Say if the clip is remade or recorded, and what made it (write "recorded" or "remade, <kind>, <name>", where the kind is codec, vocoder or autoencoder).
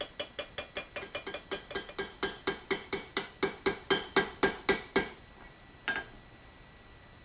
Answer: recorded